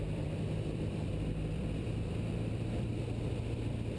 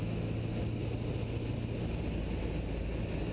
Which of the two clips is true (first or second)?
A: second